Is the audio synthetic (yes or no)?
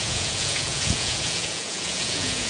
yes